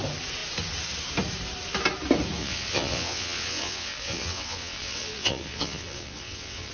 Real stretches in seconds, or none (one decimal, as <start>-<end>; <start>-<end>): 0.0-2.4